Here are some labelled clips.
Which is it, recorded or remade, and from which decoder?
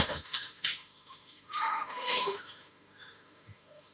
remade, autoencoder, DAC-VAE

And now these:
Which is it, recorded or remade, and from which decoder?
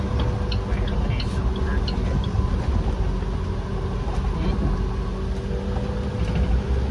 recorded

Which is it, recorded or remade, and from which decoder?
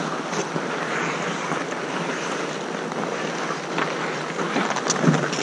recorded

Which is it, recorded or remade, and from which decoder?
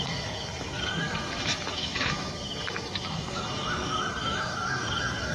remade, autoencoder, DAC-VAE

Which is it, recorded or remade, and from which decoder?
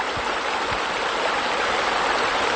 recorded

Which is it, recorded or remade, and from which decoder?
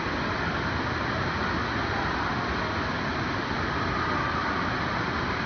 recorded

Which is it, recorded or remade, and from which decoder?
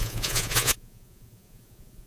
remade, vocoder, Vocos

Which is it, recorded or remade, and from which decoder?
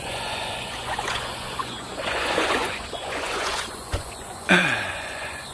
remade, vocoder, Vocos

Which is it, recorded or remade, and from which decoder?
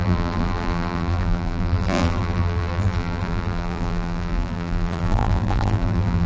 remade, vocoder, BigVGAN v2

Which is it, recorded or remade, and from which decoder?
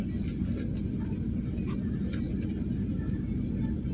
recorded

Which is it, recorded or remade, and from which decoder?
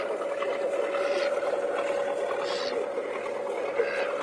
recorded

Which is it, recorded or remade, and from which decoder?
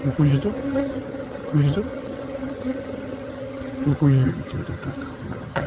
remade, vocoder, HiFi-GAN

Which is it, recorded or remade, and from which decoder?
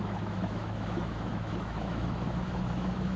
remade, autoencoder, DAC-VAE